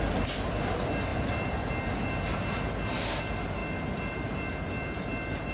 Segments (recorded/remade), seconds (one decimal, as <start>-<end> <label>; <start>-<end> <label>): 0.0-1.1 recorded; 1.1-1.9 remade; 1.9-5.5 recorded